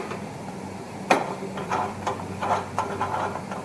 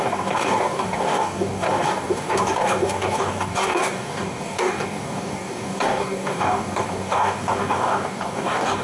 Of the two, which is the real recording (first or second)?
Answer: first